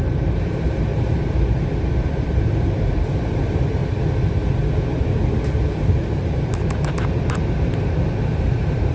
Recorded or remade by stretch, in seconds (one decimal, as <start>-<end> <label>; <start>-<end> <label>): 0.0-3.8 remade; 3.8-5.8 recorded; 5.8-8.9 remade